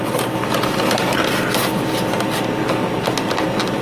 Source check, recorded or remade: recorded